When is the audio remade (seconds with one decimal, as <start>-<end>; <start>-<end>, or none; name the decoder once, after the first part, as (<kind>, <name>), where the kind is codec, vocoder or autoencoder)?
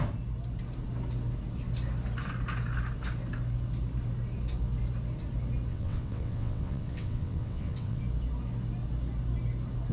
5.7-8.0 (vocoder, WaveNeXt)